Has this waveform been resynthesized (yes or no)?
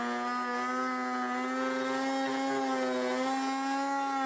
no